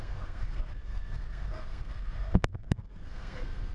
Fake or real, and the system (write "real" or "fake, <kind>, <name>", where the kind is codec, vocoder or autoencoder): fake, codec, SNAC